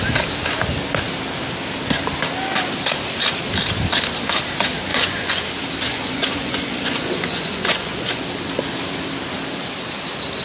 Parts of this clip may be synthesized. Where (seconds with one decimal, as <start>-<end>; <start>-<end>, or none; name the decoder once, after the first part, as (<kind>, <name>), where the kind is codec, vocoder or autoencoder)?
4.9-5.4 (vocoder, Vocos); 5.9-8.2